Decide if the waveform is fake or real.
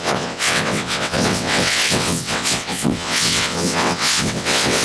fake